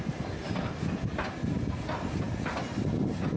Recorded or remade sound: recorded